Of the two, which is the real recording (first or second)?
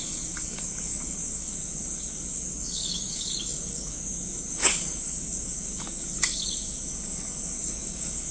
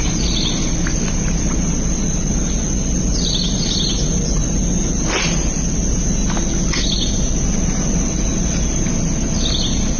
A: second